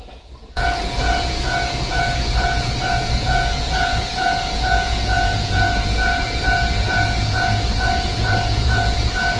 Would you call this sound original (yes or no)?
no